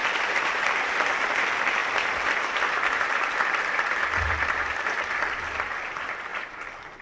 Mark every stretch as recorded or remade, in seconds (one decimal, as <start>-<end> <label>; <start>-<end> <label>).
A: 0.0-7.0 remade